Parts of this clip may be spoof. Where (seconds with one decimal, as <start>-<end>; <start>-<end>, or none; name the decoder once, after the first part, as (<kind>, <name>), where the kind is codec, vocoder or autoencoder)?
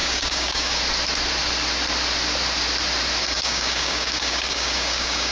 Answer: 0.0-0.8 (codec, DAC); 3.2-5.3